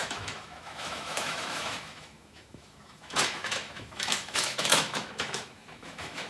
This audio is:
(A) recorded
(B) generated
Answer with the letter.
B